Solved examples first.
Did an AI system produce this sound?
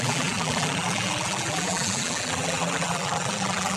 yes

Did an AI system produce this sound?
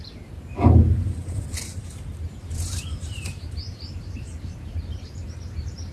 yes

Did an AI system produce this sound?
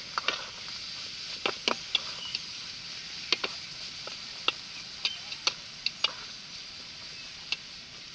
no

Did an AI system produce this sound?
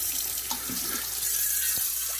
yes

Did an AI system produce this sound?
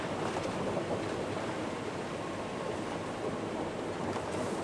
yes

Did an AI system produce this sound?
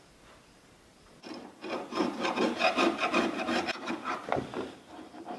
yes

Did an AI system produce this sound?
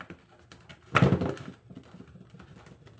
no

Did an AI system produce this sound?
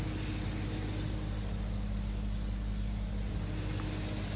no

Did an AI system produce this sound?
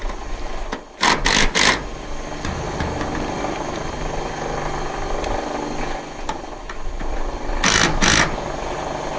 no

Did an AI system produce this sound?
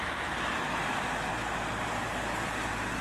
no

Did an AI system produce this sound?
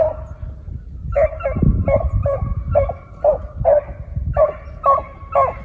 no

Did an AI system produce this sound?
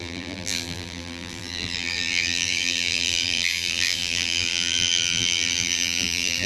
yes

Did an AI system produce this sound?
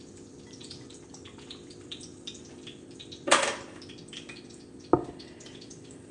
yes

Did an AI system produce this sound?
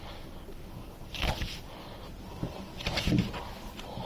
yes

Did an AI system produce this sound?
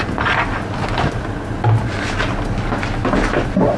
no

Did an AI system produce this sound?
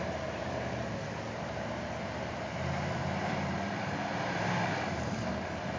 yes